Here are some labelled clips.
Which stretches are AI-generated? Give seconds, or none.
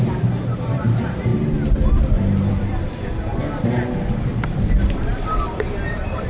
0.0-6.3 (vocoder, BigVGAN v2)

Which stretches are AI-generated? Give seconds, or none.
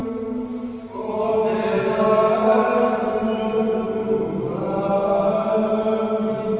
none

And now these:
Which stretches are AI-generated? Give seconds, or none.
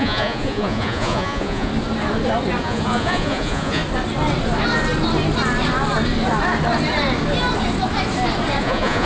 0.0-1.7 (vocoder, Vocos); 2.6-3.8; 8.6-9.1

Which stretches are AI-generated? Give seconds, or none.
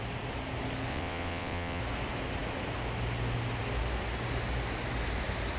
0.9-1.8 (vocoder, WaveNeXt)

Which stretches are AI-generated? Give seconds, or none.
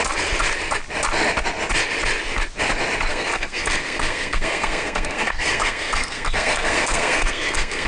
3.1-7.9 (codec, SNAC)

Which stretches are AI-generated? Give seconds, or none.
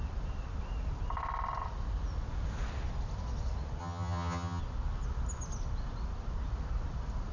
3.8-4.6 (vocoder, HiFi-GAN)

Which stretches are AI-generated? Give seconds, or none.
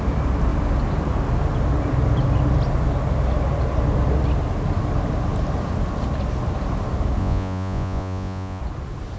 7.2-8.6 (vocoder, Vocos)